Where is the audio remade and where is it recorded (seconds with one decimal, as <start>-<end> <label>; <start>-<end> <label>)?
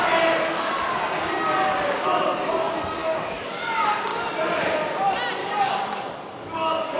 0.0-3.0 recorded; 3.0-3.6 remade; 3.6-5.4 recorded; 5.4-7.0 remade